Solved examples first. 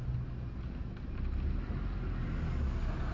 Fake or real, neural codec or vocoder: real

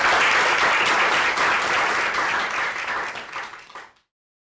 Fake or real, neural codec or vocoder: real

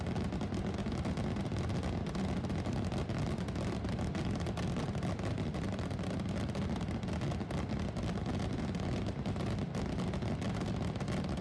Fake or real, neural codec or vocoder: real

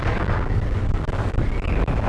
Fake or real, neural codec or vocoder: fake, codec, DAC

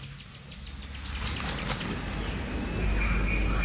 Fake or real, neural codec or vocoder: real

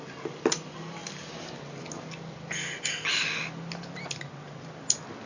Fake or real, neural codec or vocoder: real